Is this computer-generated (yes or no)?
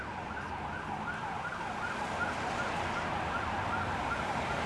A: no